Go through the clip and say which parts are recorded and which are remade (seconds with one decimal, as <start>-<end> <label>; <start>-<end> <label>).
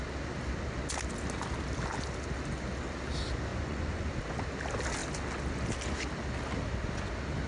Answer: 0.0-3.5 recorded; 3.5-4.1 remade; 4.1-7.5 recorded